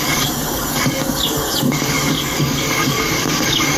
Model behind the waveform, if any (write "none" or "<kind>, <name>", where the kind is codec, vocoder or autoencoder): codec, DAC